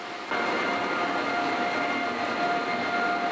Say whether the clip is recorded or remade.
recorded